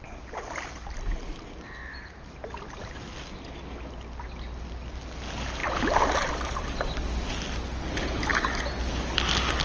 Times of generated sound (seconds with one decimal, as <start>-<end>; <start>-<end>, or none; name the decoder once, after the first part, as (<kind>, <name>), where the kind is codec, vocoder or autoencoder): 5.6-7.1 (vocoder, BigVGAN v2)

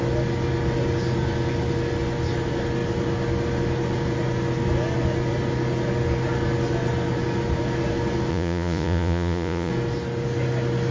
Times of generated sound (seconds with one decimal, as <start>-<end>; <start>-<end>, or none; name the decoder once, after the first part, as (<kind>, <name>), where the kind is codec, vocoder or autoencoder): 8.3-9.7 (vocoder, Vocos)